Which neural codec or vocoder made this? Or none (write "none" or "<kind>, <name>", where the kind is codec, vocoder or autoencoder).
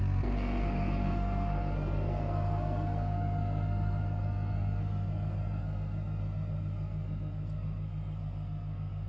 codec, SNAC